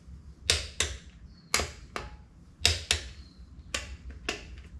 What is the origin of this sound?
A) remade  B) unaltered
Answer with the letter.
B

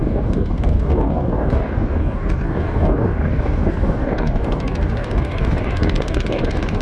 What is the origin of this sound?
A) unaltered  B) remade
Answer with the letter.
B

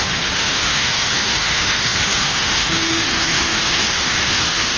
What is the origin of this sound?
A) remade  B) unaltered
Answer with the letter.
A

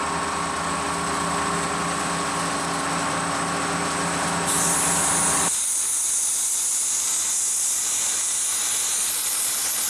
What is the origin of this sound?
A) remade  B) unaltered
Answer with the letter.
B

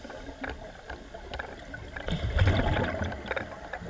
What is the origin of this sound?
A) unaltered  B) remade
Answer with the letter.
A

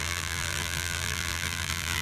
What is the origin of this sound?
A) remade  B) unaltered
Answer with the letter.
A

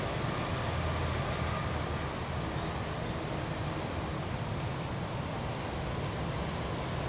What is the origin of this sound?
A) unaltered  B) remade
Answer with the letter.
A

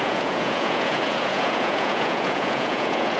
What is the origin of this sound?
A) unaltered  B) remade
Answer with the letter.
B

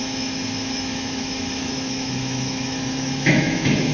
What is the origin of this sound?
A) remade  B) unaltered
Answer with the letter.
A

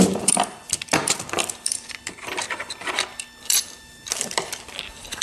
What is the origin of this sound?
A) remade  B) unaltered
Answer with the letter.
A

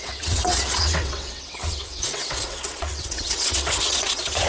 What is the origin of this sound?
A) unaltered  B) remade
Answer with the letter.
B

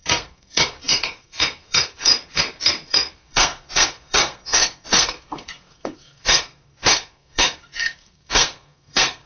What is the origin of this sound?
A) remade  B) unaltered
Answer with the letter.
A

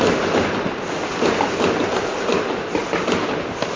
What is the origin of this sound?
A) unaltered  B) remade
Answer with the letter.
A